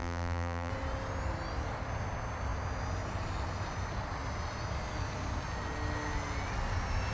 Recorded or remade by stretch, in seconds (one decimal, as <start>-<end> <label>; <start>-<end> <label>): 0.0-0.7 remade; 0.7-7.1 recorded

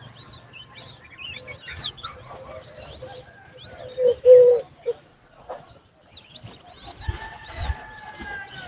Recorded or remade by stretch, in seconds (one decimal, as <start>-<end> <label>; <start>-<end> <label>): 0.0-1.7 recorded; 1.7-2.3 remade; 2.3-5.1 recorded; 5.1-5.7 remade; 5.7-7.4 recorded; 7.4-8.0 remade; 8.0-8.7 recorded

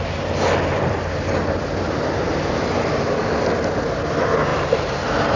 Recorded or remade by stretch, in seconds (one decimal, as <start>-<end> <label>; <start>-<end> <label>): 0.0-4.5 recorded; 4.5-5.4 remade

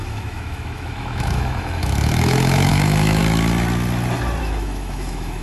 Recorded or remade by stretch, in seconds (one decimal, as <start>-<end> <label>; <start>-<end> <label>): 0.0-3.2 remade; 3.2-4.4 recorded; 4.4-5.4 remade

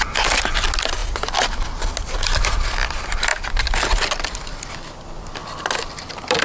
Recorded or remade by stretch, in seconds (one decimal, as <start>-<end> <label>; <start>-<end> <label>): 0.0-6.4 recorded

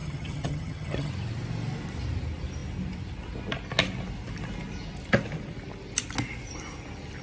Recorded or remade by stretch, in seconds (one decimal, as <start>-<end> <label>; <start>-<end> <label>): 0.0-1.1 remade; 1.1-7.2 recorded

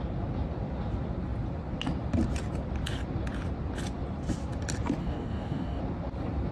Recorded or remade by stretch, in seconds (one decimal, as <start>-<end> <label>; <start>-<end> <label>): 0.0-5.0 recorded; 5.0-5.8 remade; 5.8-6.5 recorded

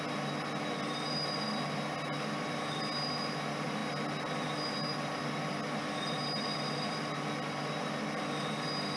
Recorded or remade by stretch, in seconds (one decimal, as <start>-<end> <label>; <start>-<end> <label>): 0.0-9.0 recorded